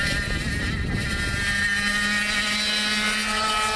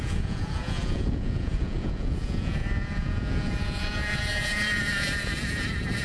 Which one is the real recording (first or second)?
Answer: first